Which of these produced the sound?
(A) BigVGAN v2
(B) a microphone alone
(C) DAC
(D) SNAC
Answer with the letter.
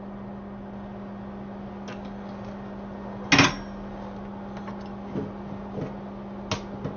B